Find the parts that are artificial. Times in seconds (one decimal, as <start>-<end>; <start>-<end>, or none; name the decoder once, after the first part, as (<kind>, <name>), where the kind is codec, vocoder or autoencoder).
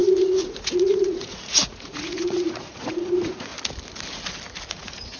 0.0-3.5 (vocoder, Vocos); 4.7-5.2